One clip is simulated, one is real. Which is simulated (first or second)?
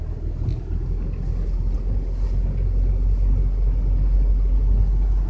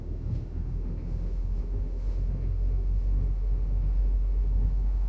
second